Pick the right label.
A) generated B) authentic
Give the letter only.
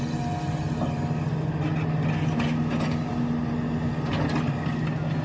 B